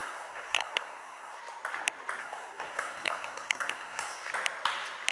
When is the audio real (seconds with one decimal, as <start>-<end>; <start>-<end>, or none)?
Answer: 1.4-2.2; 4.3-5.1